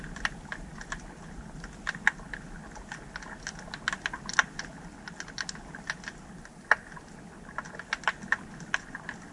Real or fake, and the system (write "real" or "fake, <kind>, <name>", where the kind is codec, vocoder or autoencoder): real